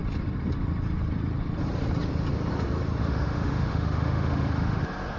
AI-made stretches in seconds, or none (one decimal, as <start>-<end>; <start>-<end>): 3.0-4.8